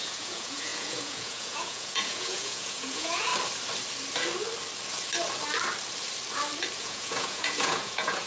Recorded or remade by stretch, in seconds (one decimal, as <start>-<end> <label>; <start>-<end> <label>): 0.0-3.3 remade; 3.3-6.8 recorded; 6.8-8.3 remade